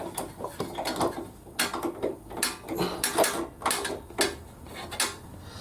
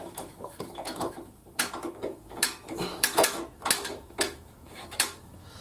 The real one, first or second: first